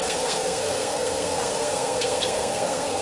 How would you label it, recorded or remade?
remade